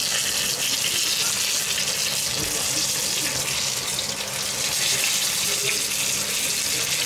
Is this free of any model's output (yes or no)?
yes